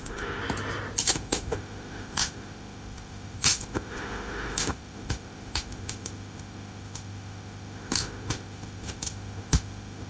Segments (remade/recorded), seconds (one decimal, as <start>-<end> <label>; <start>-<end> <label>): 0.0-0.4 remade; 0.4-1.0 recorded; 1.0-10.1 remade